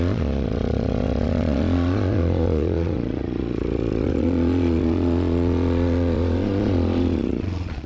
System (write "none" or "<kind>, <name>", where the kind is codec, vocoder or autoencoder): vocoder, Vocos